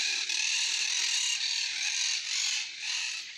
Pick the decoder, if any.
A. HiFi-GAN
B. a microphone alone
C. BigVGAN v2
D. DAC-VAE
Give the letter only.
B